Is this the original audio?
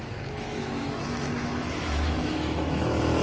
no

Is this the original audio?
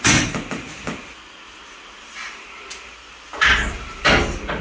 yes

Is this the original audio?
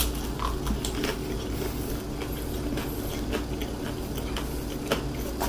yes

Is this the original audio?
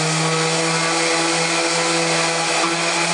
yes